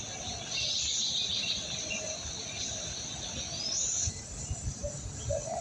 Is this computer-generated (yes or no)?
no